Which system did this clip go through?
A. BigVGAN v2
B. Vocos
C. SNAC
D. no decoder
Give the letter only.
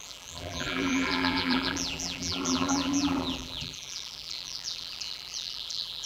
A